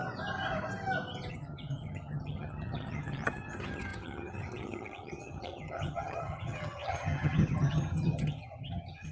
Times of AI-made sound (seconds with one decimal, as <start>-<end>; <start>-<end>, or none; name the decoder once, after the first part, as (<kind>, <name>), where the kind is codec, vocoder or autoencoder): 1.3-9.1 (vocoder, HiFi-GAN)